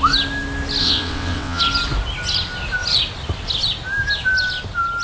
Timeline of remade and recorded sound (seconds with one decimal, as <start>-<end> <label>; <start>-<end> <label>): 0.0-0.8 recorded; 0.8-1.6 remade; 1.6-5.0 recorded